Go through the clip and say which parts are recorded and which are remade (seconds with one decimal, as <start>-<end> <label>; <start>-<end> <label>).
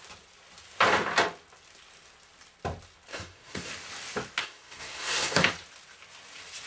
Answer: 0.0-3.1 recorded; 3.1-3.7 remade; 3.7-4.4 recorded; 4.4-5.5 remade; 5.5-6.7 recorded